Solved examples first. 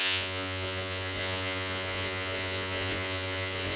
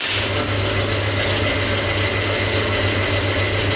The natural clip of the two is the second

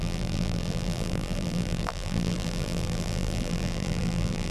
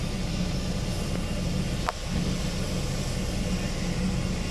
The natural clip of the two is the second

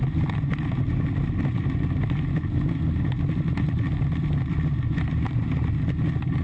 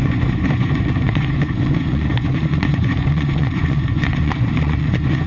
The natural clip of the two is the first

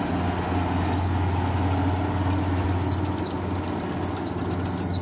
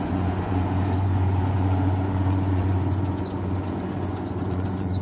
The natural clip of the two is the first